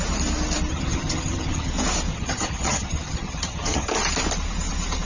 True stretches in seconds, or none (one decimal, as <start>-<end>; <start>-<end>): 0.0-0.7; 1.7-2.1; 3.9-5.0